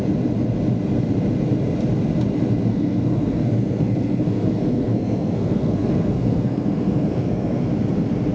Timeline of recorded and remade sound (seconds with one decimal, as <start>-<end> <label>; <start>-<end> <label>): 0.0-2.7 recorded; 2.7-7.7 remade; 7.7-8.3 recorded